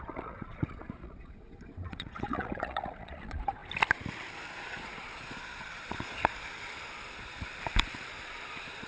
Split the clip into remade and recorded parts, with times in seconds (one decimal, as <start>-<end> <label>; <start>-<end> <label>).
0.0-3.6 remade; 3.6-4.5 recorded; 4.5-7.5 remade; 7.5-8.1 recorded; 8.1-8.9 remade